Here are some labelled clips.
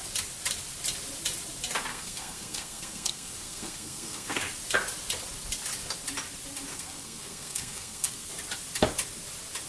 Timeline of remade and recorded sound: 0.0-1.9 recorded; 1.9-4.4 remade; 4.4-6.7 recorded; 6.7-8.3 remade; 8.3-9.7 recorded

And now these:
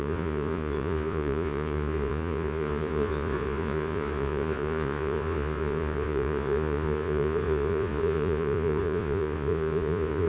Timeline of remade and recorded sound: 0.0-10.3 remade

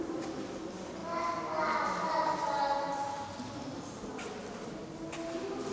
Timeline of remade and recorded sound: 0.0-5.7 recorded